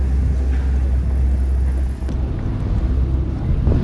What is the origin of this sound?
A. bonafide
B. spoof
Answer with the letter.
A